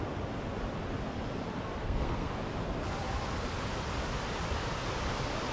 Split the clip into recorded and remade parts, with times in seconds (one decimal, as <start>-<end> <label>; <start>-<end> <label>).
0.0-1.8 recorded; 1.8-2.3 remade; 2.3-5.5 recorded